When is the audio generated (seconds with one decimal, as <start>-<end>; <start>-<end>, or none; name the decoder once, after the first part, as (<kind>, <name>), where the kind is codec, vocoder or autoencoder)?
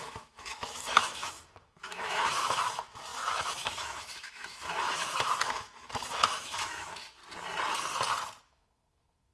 0.0-7.2 (autoencoder, DAC-VAE); 8.4-9.3